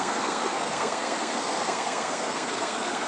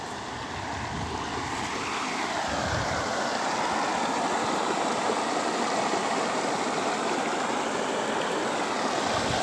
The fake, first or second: first